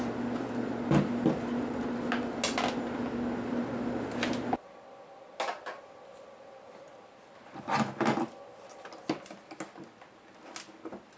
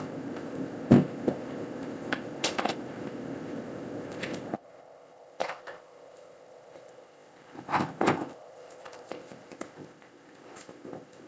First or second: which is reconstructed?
second